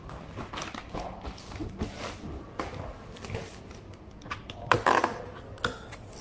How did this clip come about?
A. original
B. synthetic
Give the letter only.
A